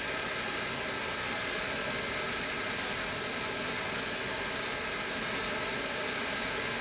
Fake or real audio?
real